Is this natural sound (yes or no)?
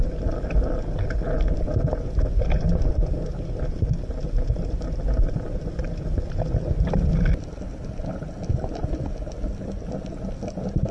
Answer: yes